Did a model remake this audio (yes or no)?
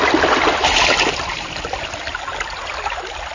no